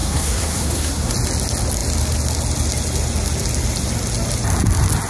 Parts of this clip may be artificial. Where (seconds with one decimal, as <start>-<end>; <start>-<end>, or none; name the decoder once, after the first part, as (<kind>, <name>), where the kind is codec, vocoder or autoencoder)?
0.0-1.1 (codec, SNAC)